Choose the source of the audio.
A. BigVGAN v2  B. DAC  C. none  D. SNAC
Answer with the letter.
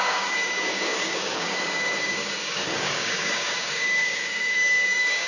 B